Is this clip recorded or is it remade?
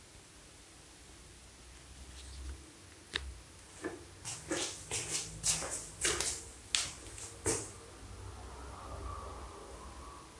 recorded